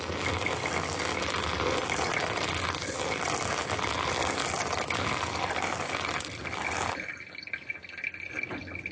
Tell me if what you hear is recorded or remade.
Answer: recorded